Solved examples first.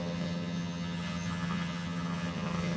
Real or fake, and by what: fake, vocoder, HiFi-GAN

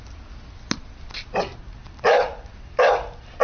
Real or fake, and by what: real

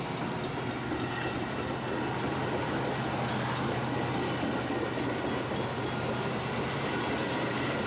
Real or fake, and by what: real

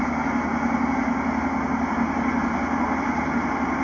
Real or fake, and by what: real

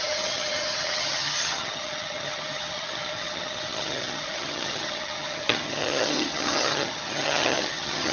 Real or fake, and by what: fake, vocoder, HiFi-GAN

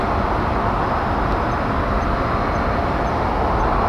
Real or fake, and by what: real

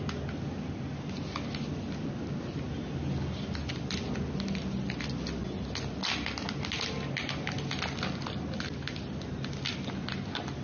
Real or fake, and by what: real